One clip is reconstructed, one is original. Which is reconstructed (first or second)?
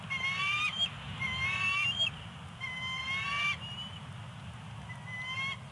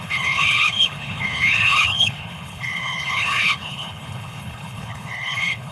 second